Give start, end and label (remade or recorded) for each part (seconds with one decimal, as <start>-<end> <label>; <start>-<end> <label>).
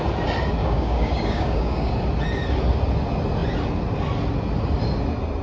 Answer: 0.0-0.6 recorded; 0.6-1.9 remade; 1.9-5.4 recorded